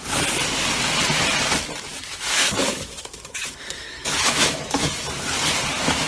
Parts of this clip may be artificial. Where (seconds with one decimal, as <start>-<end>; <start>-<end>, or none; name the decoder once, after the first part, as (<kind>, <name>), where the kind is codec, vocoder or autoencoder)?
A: 1.9-4.9 (autoencoder, DAC-VAE)